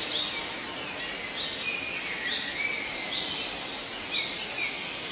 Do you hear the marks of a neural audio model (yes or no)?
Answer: no